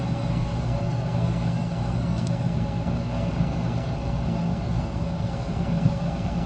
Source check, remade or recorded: remade